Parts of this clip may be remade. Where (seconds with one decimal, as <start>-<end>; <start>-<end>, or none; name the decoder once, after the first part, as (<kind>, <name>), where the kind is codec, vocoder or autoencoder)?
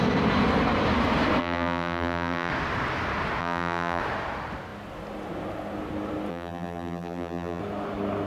1.4-2.5 (vocoder, BigVGAN v2); 3.4-4.0; 6.3-7.6